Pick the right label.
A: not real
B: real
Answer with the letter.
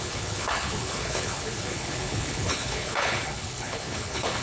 A